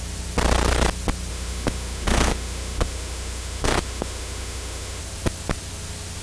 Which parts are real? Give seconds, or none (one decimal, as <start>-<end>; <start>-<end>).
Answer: 0.0-1.3; 5.0-6.2